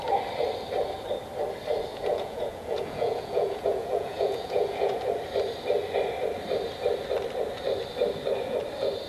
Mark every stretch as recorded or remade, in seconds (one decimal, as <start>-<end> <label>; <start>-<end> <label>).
0.0-1.9 recorded; 1.9-5.0 remade; 5.0-9.1 recorded